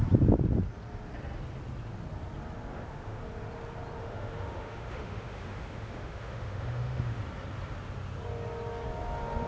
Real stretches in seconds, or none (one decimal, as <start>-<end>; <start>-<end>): 0.0-2.7; 3.2-4.0; 7.2-9.5